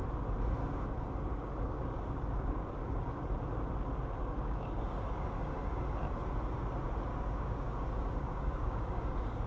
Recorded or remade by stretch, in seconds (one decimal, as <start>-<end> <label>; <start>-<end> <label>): 0.0-0.6 recorded; 0.6-3.3 remade; 3.3-4.2 recorded; 4.2-5.8 remade; 5.8-7.1 recorded; 7.1-9.5 remade